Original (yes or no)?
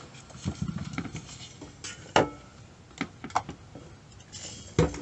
yes